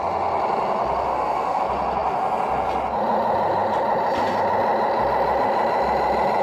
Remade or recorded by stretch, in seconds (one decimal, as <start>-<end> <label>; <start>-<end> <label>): 0.0-1.1 recorded; 1.1-1.6 remade; 1.6-6.4 recorded

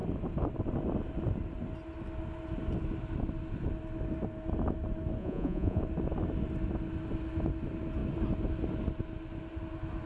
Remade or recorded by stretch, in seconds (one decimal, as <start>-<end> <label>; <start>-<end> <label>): 0.0-5.2 recorded; 5.2-5.8 remade; 5.8-10.1 recorded

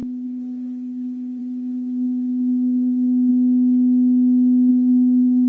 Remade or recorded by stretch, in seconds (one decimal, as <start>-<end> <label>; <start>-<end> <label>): 0.0-3.3 remade; 3.3-4.7 recorded; 4.7-5.5 remade

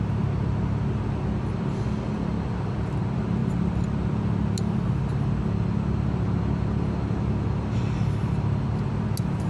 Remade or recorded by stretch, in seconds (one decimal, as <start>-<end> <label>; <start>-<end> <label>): 0.0-9.5 recorded

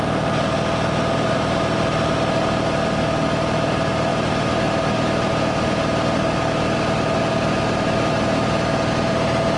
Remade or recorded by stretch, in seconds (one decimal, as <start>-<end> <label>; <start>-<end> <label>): 0.0-9.6 recorded

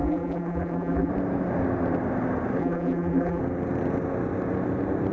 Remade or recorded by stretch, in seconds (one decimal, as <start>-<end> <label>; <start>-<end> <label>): 0.0-1.1 remade; 1.1-2.6 recorded; 2.6-3.4 remade; 3.4-5.1 recorded

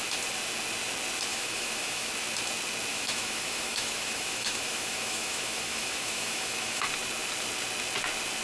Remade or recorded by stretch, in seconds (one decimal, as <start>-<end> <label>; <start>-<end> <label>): 0.0-1.3 recorded; 1.3-2.1 remade; 2.1-2.9 recorded; 2.9-6.8 remade; 6.8-8.4 recorded

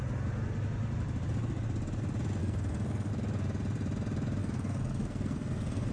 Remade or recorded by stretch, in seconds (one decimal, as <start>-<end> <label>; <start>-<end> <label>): 0.0-2.4 recorded; 2.4-3.1 remade; 3.1-4.4 recorded; 4.4-5.9 remade